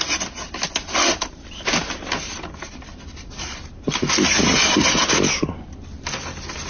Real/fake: real